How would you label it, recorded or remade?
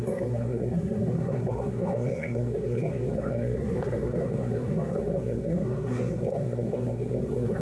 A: remade